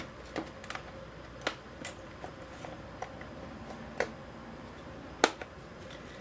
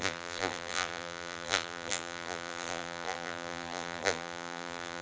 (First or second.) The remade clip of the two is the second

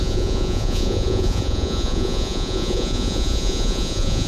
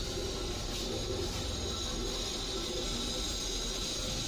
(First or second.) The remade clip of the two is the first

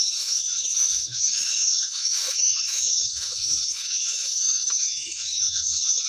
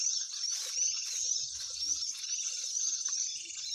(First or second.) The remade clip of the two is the first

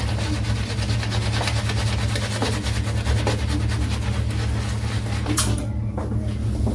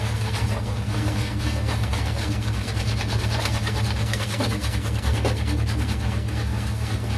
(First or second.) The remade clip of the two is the second